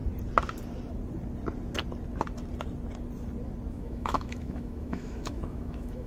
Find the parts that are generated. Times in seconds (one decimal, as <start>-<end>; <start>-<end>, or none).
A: 3.7-6.1